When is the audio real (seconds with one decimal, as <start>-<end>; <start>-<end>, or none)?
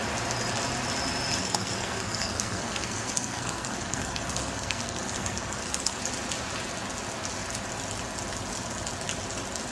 0.0-1.4; 6.0-9.7